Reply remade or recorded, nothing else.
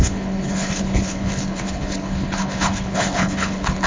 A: remade